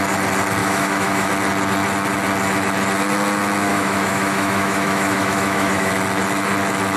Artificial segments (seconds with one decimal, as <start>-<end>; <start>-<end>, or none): 0.6-1.3; 3.7-5.9